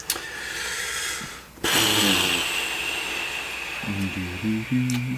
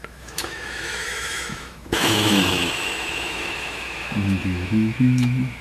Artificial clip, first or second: second